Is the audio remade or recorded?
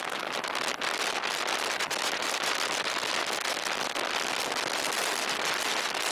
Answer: recorded